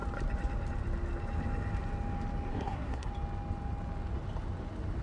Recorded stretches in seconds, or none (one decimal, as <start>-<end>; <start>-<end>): 0.0-2.5; 3.1-5.0